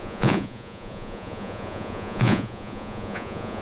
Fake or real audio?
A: fake